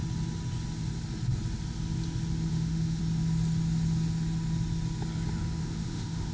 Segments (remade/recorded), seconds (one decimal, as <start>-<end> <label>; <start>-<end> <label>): 0.0-2.5 recorded; 2.5-3.0 remade; 3.0-5.6 recorded; 5.6-6.3 remade